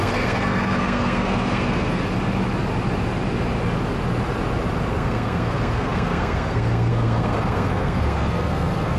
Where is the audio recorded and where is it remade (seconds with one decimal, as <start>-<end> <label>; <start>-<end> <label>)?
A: 0.0-2.0 remade; 2.0-4.9 recorded; 4.9-9.0 remade